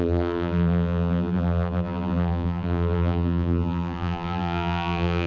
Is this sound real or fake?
fake